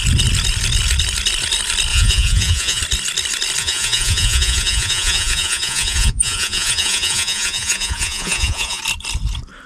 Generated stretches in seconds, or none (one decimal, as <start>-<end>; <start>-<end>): 1.9-2.8; 3.6-8.8